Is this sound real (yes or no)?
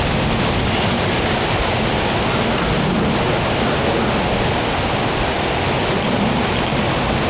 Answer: yes